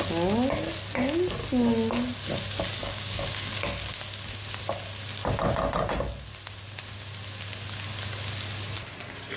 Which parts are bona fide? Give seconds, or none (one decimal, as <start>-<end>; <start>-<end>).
0.0-2.8; 3.5-9.4